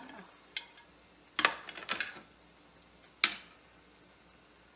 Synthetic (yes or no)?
no